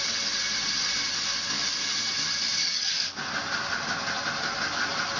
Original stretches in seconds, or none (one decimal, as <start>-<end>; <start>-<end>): 0.0-2.6; 3.2-5.2